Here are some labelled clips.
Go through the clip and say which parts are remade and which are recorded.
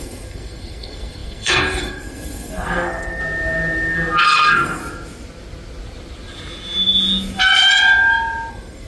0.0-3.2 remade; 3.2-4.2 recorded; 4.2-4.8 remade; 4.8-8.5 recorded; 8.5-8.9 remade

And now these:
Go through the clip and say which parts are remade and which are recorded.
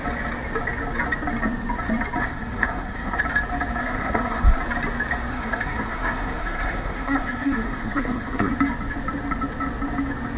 0.0-2.2 recorded; 2.2-3.2 remade; 3.2-3.8 recorded; 3.8-4.6 remade; 4.6-5.3 recorded; 5.3-8.5 remade; 8.5-10.4 recorded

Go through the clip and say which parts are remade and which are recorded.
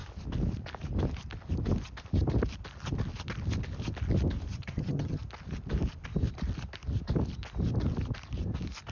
0.0-4.5 recorded; 4.5-5.2 remade; 5.2-8.9 recorded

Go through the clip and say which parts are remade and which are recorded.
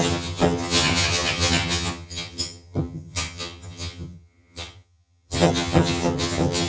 0.0-6.7 remade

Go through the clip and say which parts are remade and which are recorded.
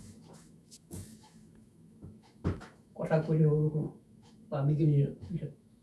0.0-5.8 remade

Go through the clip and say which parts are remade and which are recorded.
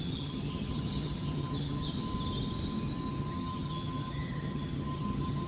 0.0-2.0 remade; 2.0-3.1 recorded; 3.1-5.5 remade